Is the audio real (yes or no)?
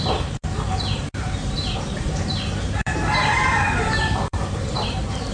no